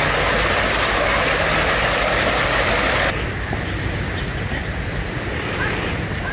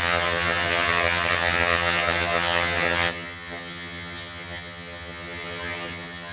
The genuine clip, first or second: first